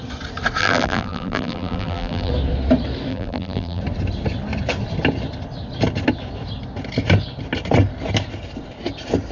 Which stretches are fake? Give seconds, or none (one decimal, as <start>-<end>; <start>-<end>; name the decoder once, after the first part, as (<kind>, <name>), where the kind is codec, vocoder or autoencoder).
0.6-2.3 (vocoder, BigVGAN v2); 3.1-3.8